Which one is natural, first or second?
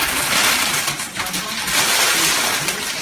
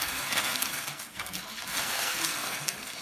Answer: first